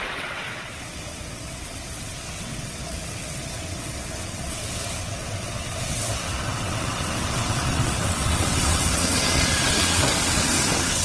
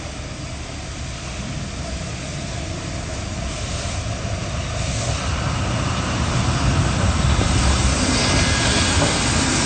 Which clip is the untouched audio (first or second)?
second